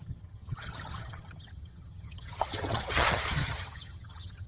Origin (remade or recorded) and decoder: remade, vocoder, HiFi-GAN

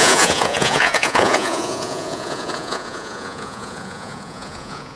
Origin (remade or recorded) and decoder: remade, vocoder, Vocos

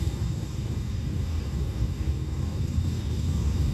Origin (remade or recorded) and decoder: remade, codec, DAC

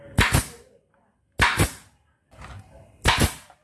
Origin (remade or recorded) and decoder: recorded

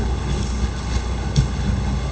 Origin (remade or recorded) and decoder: remade, codec, HILCodec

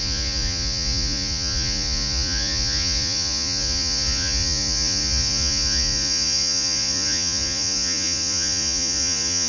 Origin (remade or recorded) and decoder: remade, vocoder, Vocos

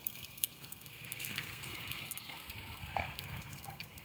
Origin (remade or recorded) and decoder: remade, codec, SNAC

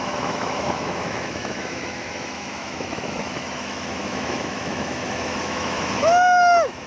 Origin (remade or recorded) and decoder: remade, autoencoder, DAC-VAE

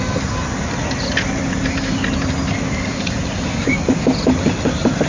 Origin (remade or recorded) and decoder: recorded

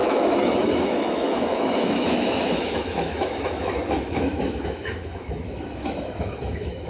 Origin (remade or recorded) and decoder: remade, autoencoder, DAC-VAE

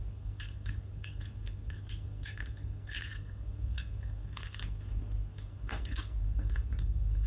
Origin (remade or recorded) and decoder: remade, codec, SNAC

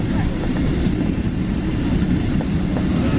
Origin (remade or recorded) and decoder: recorded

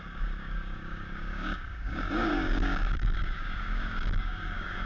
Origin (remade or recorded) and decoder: remade, codec, DAC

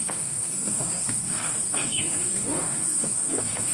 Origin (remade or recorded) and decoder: remade, codec, DAC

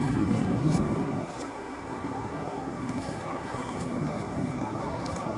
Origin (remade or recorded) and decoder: remade, codec, SNAC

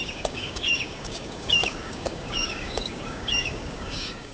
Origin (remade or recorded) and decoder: remade, codec, DAC